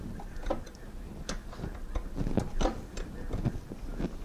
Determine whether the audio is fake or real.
real